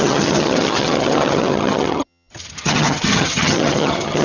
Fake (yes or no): yes